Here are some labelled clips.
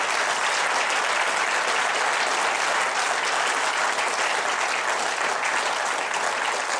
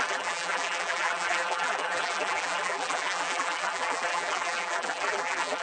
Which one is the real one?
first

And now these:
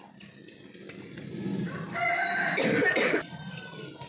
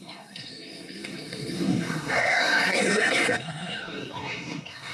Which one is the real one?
first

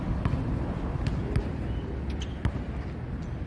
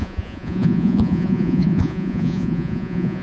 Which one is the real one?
first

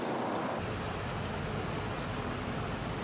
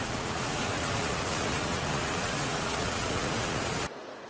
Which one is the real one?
first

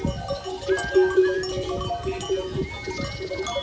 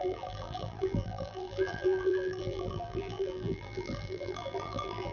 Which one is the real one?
first